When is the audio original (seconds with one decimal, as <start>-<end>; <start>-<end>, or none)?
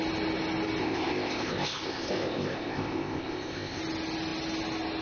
0.0-0.8; 3.8-5.0